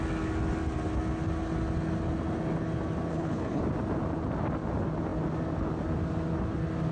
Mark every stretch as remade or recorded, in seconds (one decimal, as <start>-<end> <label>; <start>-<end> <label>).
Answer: 0.0-3.1 recorded; 3.1-3.6 remade; 3.6-6.9 recorded